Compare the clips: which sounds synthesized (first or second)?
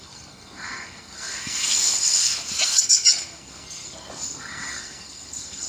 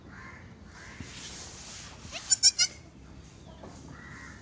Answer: first